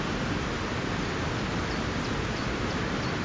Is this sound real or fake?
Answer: real